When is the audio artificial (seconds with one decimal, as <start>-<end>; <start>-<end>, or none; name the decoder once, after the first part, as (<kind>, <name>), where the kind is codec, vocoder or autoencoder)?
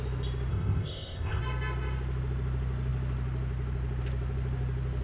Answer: 0.5-1.4 (codec, ZipCodec)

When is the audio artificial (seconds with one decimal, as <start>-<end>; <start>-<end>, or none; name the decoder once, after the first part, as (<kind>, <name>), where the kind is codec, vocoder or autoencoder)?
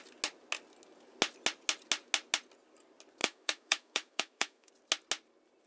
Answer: 3.2-4.7 (autoencoder, DAC-VAE)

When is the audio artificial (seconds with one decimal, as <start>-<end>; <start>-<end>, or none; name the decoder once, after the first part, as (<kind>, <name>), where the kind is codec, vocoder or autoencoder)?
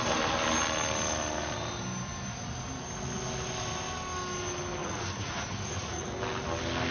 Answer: 4.8-6.2 (vocoder, Vocos)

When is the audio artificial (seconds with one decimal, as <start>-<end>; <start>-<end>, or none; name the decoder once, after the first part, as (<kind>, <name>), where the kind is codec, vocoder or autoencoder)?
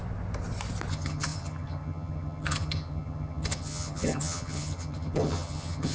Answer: 0.9-5.9 (vocoder, HiFi-GAN)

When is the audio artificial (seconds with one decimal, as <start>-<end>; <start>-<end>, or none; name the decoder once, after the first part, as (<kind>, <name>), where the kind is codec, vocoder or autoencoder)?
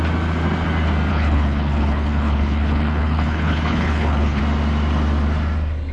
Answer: 1.1-4.4 (codec, HILCodec)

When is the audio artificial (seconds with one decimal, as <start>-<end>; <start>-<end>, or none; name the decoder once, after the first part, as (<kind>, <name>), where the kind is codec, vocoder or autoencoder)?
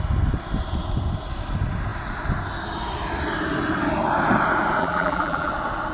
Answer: 4.8-5.5 (vocoder, BigVGAN v2)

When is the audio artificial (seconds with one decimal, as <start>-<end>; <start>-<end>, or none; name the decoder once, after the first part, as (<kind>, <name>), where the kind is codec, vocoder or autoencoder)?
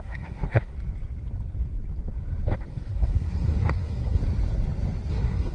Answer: 0.0-0.7 (codec, SNAC); 2.7-4.2; 5.1-5.5